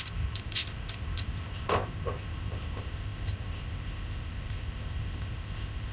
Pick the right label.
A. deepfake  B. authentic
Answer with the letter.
A